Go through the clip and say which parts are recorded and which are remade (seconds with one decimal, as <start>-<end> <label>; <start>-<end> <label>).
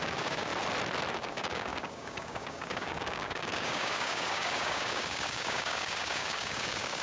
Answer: 0.0-0.5 remade; 0.5-1.1 recorded; 1.1-7.0 remade